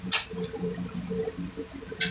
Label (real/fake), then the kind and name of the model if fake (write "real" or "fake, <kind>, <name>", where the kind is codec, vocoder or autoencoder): real